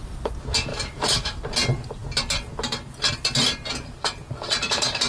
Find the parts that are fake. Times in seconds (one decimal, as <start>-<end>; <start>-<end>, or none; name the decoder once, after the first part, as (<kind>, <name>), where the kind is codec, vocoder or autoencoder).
0.7-1.4 (autoencoder, DAC-VAE)